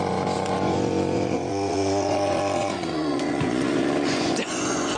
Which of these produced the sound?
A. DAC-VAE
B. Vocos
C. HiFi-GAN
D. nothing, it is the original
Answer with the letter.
B